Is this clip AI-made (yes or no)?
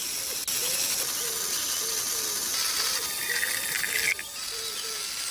no